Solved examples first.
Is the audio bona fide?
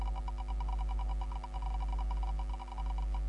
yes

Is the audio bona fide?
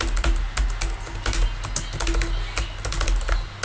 yes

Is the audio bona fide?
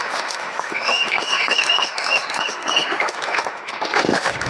no